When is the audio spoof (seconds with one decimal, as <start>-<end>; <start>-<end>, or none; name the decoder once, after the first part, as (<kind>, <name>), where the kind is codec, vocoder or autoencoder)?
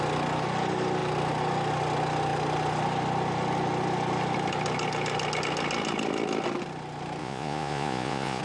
7.2-8.4 (vocoder, Vocos)